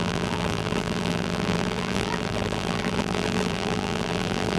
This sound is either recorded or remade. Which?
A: remade